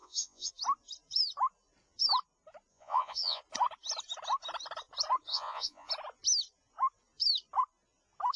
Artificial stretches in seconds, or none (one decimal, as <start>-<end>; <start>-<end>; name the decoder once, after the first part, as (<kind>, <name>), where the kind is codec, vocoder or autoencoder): 0.0-0.5 (vocoder, Vocos); 2.7-3.4; 5.3-5.9